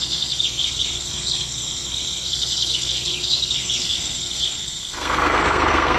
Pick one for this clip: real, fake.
fake